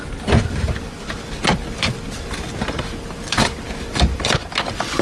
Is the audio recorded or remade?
remade